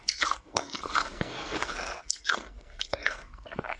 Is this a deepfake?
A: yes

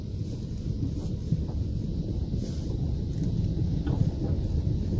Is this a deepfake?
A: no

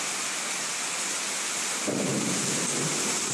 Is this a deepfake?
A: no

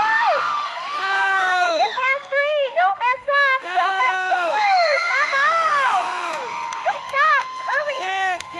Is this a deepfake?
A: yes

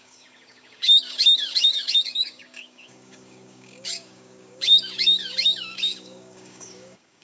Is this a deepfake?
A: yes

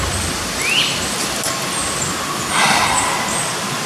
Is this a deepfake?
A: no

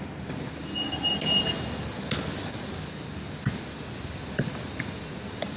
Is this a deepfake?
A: no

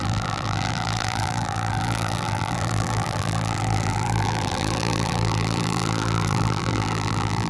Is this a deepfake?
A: yes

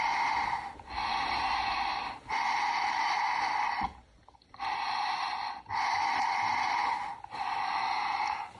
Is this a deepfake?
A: no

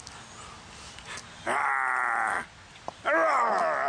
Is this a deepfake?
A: no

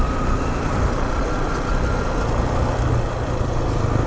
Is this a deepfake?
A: no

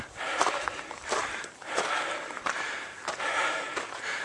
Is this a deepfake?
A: yes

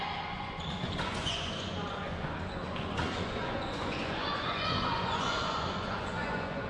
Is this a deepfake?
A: yes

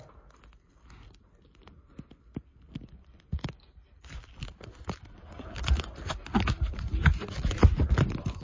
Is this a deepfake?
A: no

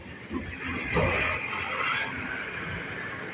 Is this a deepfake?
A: no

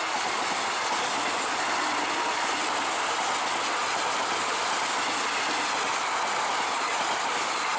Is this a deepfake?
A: no